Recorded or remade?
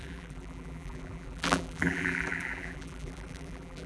remade